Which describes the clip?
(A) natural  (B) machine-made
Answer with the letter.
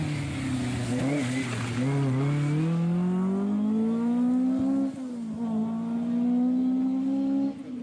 A